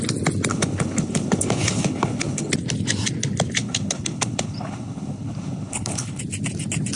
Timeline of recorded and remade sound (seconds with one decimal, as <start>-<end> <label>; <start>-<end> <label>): 0.0-0.5 recorded; 0.5-2.5 remade; 2.5-3.6 recorded; 3.6-6.2 remade; 6.2-7.0 recorded

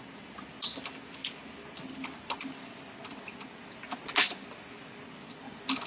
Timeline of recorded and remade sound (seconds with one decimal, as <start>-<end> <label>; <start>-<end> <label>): 0.0-5.9 recorded